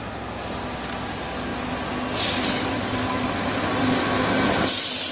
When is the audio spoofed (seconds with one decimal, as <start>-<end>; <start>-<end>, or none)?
none